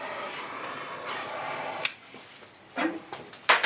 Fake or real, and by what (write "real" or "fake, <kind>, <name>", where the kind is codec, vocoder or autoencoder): real